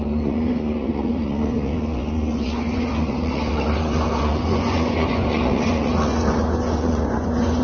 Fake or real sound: fake